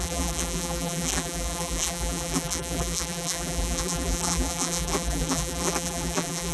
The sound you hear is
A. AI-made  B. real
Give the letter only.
A